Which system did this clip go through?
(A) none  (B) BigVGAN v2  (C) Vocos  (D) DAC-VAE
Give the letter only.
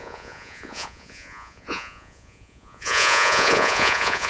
C